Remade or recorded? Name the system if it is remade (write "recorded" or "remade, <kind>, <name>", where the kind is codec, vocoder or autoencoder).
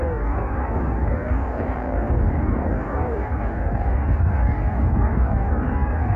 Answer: remade, codec, DAC